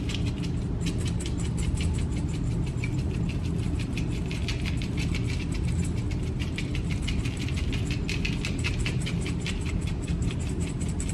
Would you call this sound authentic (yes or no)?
no